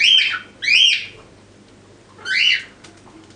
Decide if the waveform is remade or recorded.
recorded